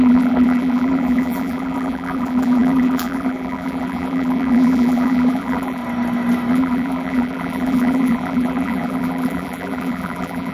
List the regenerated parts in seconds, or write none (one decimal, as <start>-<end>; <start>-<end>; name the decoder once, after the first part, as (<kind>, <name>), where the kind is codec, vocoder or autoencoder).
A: 0.0-5.8 (vocoder, BigVGAN v2); 6.5-10.5